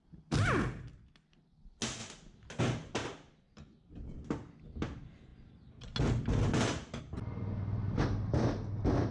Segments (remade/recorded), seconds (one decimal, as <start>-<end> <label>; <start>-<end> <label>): 0.0-3.0 recorded; 3.0-3.9 remade; 3.9-9.1 recorded